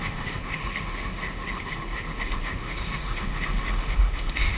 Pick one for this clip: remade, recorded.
remade